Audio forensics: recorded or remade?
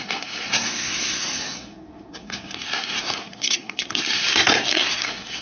remade